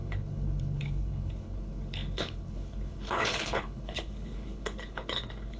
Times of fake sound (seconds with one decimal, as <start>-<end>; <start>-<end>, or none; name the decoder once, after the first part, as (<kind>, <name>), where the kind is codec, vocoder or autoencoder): 0.0-5.6 (codec, HILCodec)